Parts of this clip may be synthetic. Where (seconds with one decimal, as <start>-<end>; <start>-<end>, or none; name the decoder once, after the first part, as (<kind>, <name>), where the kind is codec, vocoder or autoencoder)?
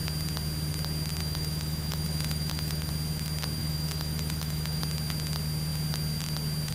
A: 1.2-2.9 (autoencoder, DAC-VAE); 3.6-4.8